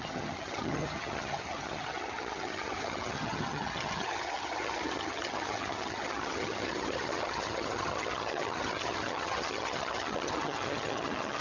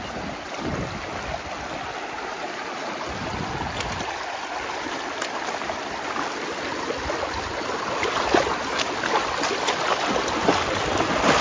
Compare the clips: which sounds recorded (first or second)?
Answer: second